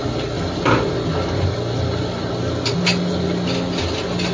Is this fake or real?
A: real